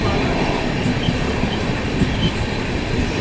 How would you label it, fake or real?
real